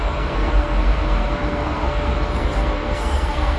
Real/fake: fake